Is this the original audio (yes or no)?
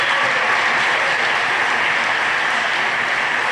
yes